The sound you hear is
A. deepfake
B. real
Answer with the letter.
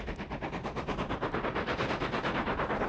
B